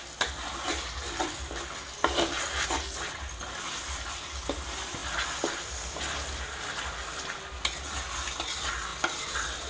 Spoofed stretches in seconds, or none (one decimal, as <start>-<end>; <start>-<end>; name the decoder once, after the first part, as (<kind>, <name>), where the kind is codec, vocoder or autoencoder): none